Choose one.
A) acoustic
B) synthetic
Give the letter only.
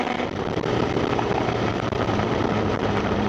B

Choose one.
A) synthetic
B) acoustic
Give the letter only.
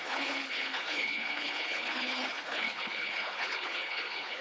A